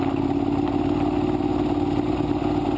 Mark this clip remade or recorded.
recorded